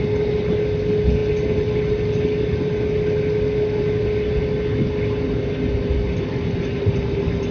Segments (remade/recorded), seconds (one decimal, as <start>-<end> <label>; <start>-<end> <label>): 0.0-7.5 recorded